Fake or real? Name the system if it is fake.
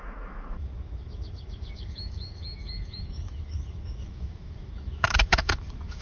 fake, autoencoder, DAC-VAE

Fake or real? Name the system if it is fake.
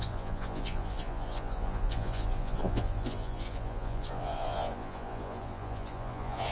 fake, vocoder, Vocos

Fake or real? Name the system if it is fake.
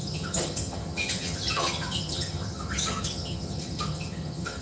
fake, vocoder, HiFi-GAN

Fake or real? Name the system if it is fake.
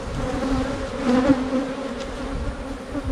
real